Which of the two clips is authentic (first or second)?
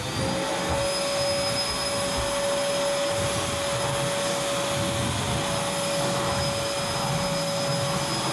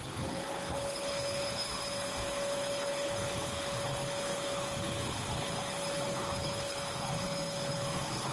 first